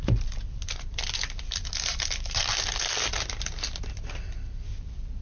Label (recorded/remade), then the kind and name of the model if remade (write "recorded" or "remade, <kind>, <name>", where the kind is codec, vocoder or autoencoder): recorded